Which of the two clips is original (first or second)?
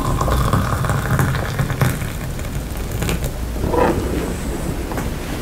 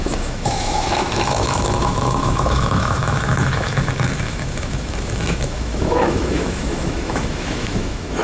first